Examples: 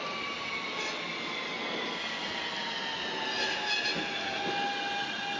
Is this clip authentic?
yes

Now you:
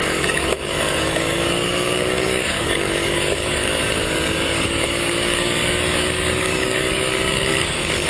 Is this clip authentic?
no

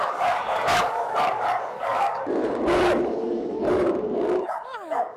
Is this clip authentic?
no